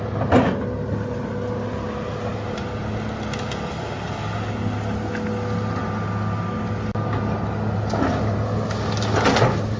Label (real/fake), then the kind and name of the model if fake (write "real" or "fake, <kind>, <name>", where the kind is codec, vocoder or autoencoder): real